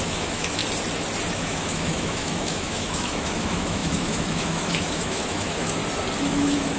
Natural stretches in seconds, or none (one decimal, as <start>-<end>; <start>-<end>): 0.6-1.3; 5.8-6.3